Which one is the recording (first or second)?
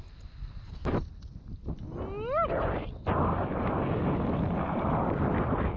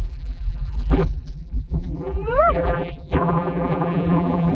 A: first